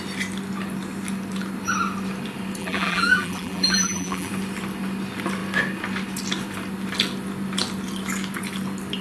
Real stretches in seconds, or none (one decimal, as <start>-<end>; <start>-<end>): 0.0-2.6; 4.3-9.0